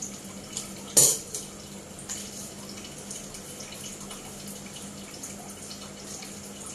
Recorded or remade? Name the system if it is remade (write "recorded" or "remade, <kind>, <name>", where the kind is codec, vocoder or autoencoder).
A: recorded